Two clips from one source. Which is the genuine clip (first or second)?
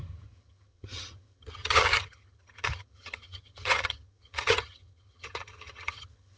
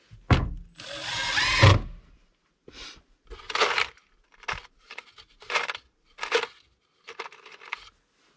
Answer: second